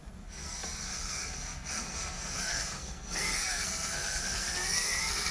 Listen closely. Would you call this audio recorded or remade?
remade